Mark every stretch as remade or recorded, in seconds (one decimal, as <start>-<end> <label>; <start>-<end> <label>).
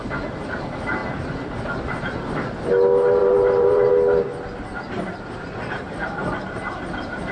0.0-1.0 recorded; 1.0-2.3 remade; 2.3-3.2 recorded; 3.2-3.9 remade; 3.9-4.7 recorded; 4.7-6.8 remade; 6.8-7.3 recorded